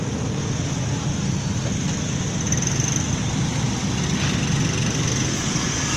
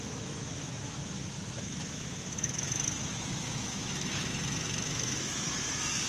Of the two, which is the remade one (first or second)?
second